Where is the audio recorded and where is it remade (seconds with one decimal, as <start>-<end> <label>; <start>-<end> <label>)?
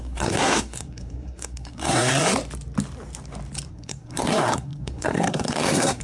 0.0-2.1 remade; 2.1-3.7 recorded; 3.7-6.0 remade